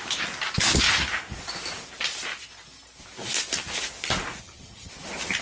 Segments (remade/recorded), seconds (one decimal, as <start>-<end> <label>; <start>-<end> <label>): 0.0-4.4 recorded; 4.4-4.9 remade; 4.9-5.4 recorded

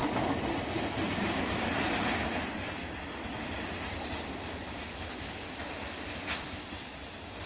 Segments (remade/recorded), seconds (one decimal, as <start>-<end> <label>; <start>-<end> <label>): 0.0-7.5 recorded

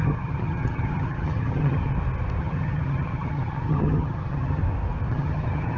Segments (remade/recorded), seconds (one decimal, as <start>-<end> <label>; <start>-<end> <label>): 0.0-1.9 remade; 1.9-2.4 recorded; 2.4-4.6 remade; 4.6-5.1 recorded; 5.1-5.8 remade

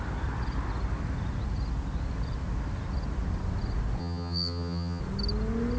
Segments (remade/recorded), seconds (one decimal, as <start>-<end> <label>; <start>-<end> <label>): 0.0-4.0 recorded; 4.0-5.0 remade; 5.0-5.8 recorded